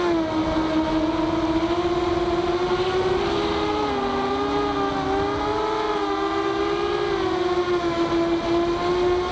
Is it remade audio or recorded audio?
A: recorded